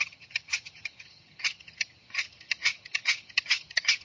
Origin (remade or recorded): remade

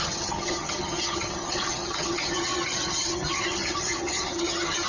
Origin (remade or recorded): remade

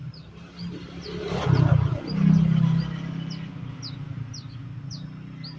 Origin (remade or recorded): recorded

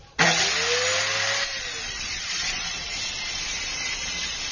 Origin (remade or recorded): recorded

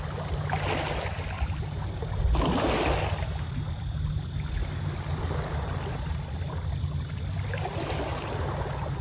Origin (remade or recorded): recorded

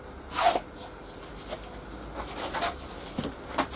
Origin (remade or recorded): recorded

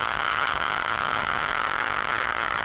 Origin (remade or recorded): remade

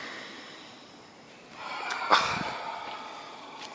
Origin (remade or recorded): recorded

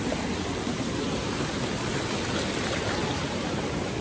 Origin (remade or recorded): recorded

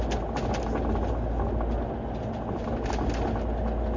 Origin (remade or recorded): recorded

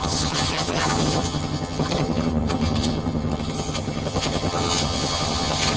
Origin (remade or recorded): remade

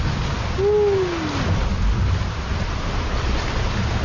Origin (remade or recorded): recorded